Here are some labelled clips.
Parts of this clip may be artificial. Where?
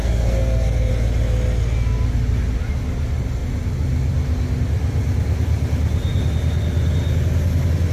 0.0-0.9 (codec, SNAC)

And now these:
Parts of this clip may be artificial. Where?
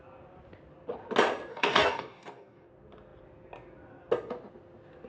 1.5-2.7 (codec, DAC)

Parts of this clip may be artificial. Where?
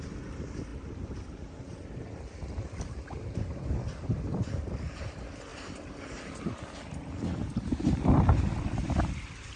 0.0-5.5 (vocoder, BigVGAN v2); 6.8-9.6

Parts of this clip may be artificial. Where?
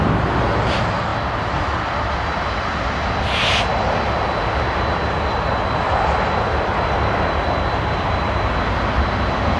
none